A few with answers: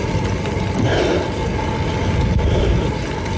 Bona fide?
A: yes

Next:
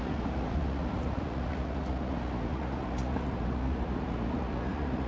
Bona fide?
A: no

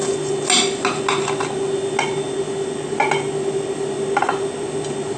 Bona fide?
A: yes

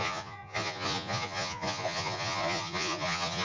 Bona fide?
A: no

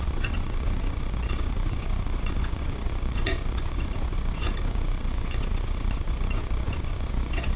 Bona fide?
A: no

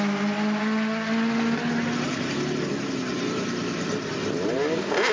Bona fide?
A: yes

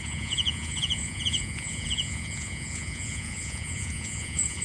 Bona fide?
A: no